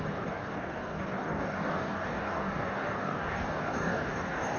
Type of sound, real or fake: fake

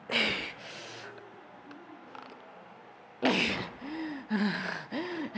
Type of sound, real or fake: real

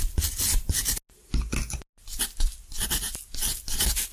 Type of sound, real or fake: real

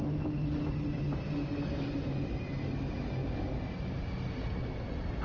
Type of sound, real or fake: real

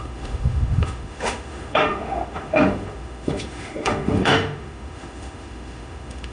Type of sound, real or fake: fake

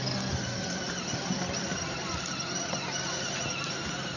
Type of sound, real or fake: real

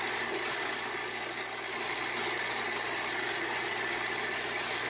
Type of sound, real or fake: real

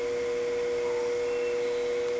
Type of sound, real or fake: real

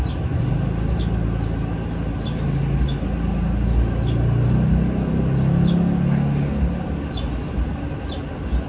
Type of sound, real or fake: real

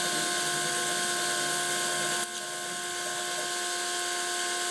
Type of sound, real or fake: real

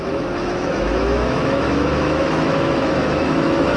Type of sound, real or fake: fake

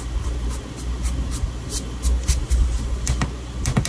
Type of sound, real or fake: real